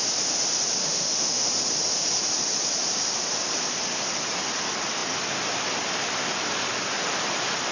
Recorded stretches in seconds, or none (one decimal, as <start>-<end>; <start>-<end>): 0.0-0.8; 1.5-7.7